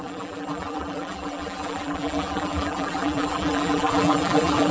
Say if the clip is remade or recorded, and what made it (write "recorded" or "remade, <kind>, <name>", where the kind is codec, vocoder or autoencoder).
remade, vocoder, BigVGAN v2